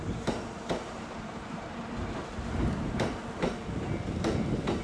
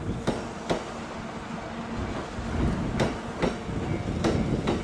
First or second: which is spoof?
first